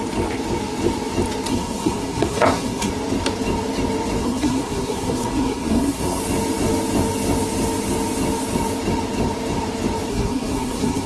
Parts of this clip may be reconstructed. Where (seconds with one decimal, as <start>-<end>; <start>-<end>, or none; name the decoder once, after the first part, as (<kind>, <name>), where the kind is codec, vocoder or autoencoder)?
1.5-2.9 (codec, SNAC); 4.2-6.2; 10.1-11.1